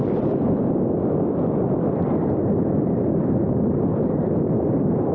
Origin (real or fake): real